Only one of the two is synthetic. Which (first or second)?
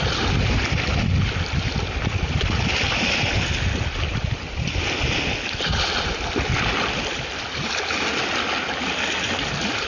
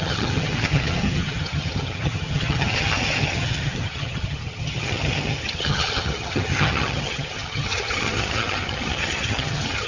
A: second